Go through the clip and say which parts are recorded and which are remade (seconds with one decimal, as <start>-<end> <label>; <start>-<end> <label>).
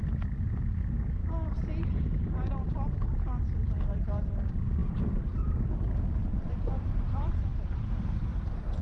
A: 0.0-6.3 recorded; 6.3-7.3 remade; 7.3-8.8 recorded